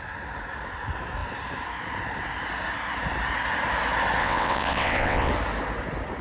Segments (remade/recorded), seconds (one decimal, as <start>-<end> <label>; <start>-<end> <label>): 0.0-4.2 recorded; 4.2-5.3 remade; 5.3-6.2 recorded